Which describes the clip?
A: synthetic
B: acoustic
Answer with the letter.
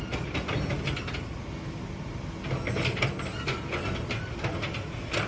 B